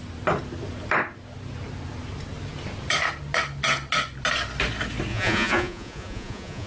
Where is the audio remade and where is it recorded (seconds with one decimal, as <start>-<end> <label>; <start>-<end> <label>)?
0.0-5.1 recorded; 5.1-6.7 remade